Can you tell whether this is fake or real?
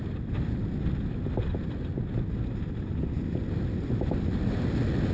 real